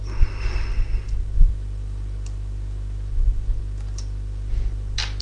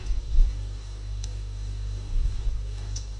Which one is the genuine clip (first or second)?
first